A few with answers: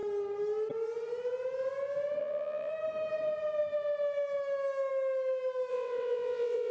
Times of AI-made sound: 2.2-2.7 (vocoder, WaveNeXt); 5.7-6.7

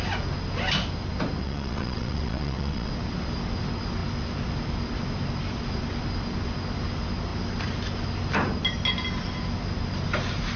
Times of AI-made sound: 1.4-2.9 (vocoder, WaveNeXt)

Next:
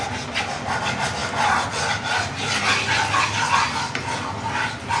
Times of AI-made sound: none